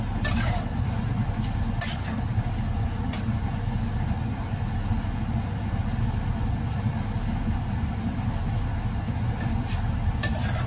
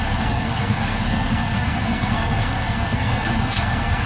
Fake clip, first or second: second